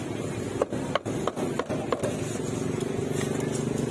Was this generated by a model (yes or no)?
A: no